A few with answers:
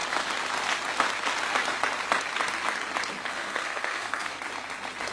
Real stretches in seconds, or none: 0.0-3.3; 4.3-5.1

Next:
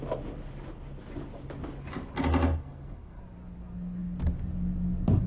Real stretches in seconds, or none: 0.0-2.6; 3.2-5.3

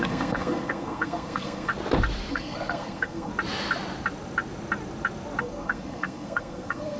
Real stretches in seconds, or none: 1.7-2.3; 3.3-5.4

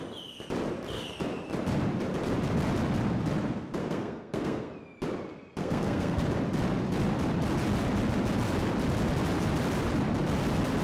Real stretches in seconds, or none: 0.0-3.8; 4.7-5.6; 6.2-10.8

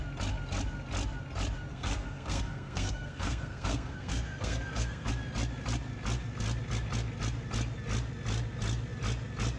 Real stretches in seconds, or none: 0.0-1.7; 5.1-9.6

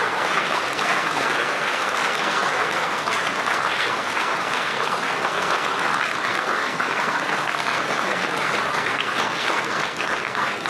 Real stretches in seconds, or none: none

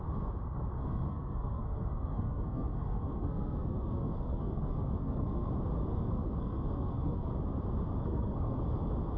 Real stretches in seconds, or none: 0.0-0.7; 5.5-5.9; 7.3-8.0; 8.6-9.2

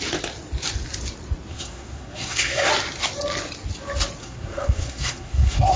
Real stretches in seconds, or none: 0.0-1.5; 2.7-4.2